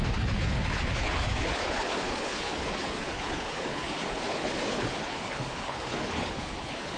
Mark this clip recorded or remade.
remade